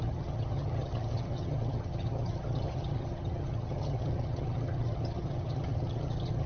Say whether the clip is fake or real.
fake